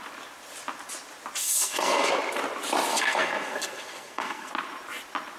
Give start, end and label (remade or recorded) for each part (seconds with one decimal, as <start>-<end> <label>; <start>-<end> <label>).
0.0-1.4 recorded; 1.4-2.1 remade; 2.1-2.9 recorded; 2.9-4.5 remade; 4.5-5.4 recorded

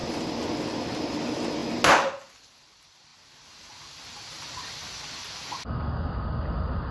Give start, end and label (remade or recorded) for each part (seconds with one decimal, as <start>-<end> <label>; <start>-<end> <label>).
0.0-6.9 recorded

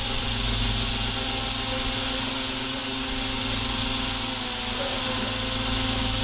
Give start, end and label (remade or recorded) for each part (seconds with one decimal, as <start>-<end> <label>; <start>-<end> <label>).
0.0-6.2 recorded

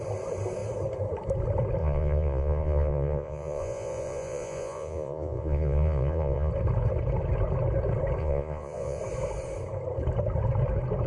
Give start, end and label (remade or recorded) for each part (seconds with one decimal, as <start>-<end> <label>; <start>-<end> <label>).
0.0-1.8 recorded; 1.8-6.5 remade; 6.5-8.2 recorded; 8.2-9.0 remade; 9.0-11.1 recorded